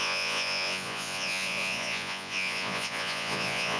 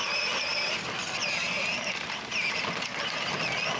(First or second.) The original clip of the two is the second